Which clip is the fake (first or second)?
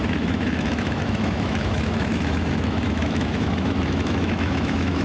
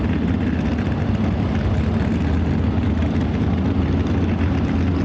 first